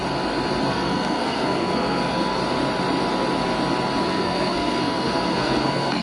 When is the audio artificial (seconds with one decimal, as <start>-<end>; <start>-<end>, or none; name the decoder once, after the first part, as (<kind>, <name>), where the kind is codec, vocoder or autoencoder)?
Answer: 0.7-2.4 (codec, SNAC); 4.0-6.0